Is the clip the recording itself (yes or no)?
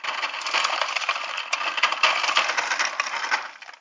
yes